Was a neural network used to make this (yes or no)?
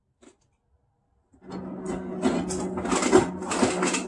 no